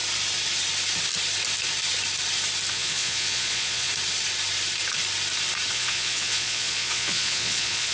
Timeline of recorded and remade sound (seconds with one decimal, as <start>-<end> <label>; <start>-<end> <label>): 0.0-2.7 recorded; 2.7-3.9 remade; 3.9-5.7 recorded; 5.7-7.9 remade